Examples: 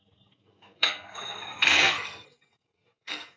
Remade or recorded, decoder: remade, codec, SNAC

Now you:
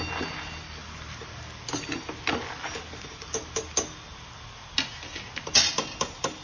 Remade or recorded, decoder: recorded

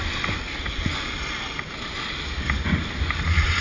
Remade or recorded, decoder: recorded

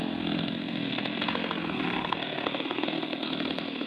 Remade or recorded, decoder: remade, codec, SNAC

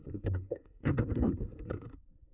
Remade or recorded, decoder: remade, codec, SNAC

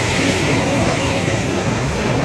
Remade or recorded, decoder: remade, codec, SNAC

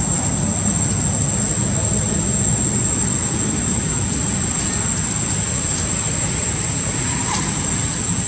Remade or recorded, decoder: recorded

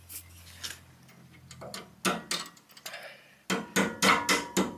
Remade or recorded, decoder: recorded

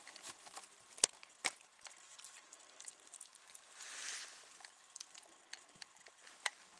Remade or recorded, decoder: recorded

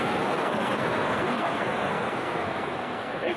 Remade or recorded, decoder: remade, codec, SNAC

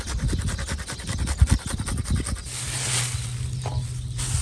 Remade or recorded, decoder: recorded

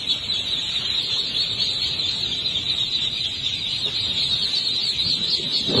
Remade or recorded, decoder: recorded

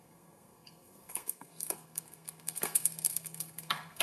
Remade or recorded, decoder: remade, codec, SNAC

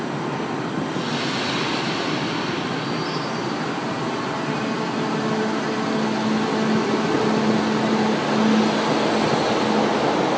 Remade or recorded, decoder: recorded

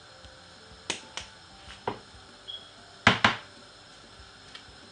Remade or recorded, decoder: recorded